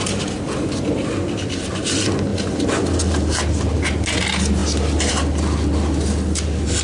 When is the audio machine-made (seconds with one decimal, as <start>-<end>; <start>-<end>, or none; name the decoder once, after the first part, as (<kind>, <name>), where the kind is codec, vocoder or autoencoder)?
0.0-1.7 (vocoder, BigVGAN v2)